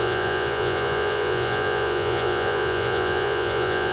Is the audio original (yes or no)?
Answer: no